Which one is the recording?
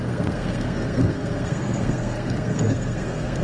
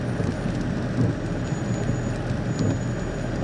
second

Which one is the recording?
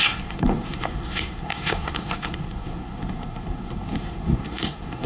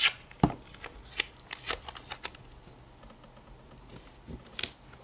second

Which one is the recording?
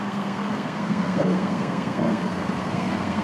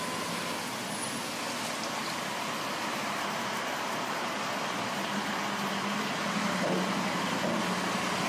second